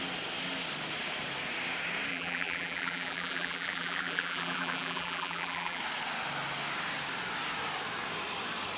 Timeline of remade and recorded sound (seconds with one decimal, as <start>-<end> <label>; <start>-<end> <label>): 0.0-2.1 recorded; 2.1-5.8 remade; 5.8-8.8 recorded